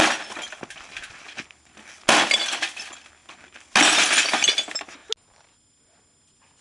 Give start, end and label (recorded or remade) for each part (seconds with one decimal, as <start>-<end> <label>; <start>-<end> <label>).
0.0-6.6 recorded